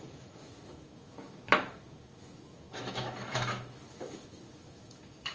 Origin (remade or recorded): remade